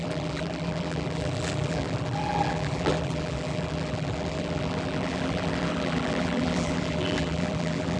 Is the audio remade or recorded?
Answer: remade